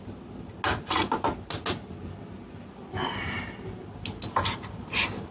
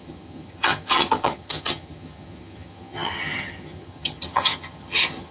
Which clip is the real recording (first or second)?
first